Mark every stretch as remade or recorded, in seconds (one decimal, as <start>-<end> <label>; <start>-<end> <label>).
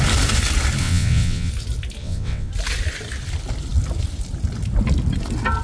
0.0-0.8 recorded; 0.8-1.5 remade; 1.5-2.0 recorded; 2.0-2.5 remade; 2.5-5.6 recorded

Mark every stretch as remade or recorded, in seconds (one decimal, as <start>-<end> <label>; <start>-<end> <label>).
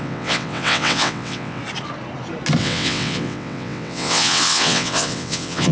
0.0-1.6 remade; 1.6-2.6 recorded; 2.6-5.7 remade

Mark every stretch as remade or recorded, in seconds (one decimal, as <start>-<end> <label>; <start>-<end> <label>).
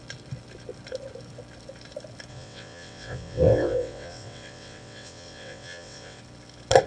0.0-2.3 recorded; 2.3-6.2 remade; 6.2-6.9 recorded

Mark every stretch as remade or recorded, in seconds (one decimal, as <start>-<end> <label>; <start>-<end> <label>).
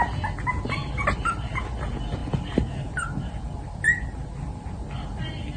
0.0-5.6 recorded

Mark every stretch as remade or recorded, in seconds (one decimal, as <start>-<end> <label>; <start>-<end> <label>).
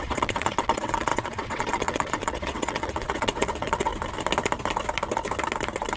0.0-3.9 remade; 3.9-6.0 recorded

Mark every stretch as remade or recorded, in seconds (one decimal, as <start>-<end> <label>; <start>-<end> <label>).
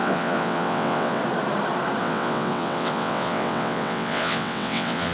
0.0-1.2 remade; 1.2-2.0 recorded; 2.0-5.1 remade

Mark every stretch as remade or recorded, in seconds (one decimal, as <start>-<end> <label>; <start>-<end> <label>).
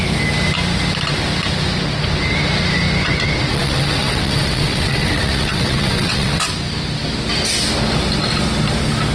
0.0-3.5 recorded; 3.5-6.5 remade; 6.5-9.1 recorded